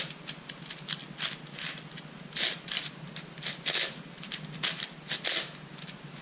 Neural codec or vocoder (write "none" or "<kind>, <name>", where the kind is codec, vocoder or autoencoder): none